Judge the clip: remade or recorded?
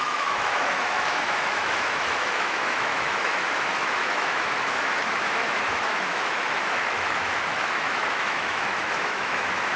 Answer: remade